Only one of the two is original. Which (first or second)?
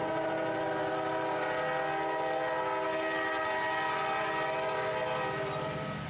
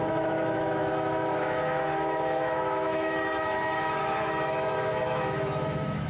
first